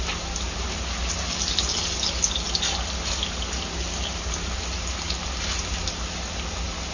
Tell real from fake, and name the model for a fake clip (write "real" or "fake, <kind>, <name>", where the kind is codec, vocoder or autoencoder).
real